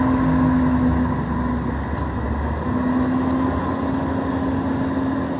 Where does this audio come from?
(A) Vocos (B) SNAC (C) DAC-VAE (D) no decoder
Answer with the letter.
D